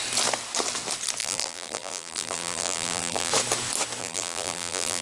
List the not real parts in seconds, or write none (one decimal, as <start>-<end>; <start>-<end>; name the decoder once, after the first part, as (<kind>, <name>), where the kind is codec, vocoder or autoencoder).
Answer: 1.2-3.3 (vocoder, BigVGAN v2); 4.0-5.0